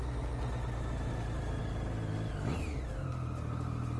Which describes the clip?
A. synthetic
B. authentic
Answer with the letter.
B